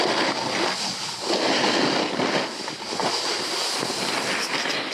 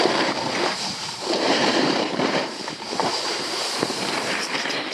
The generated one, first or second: second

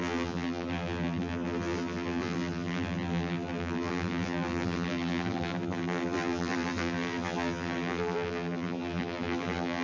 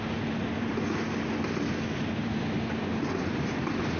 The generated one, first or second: first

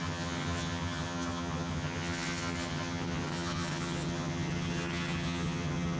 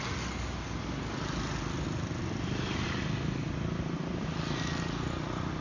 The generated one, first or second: first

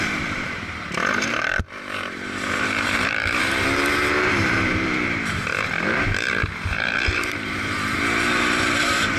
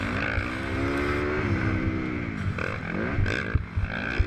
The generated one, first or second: first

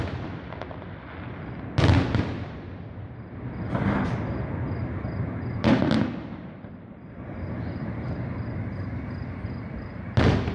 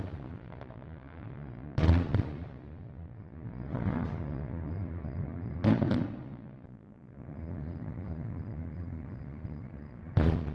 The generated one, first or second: second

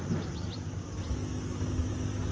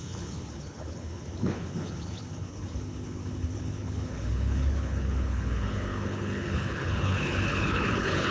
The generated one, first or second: second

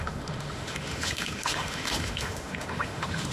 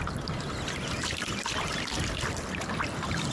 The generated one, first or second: first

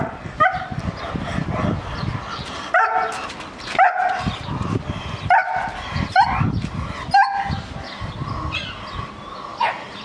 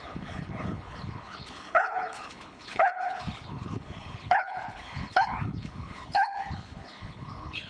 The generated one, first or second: second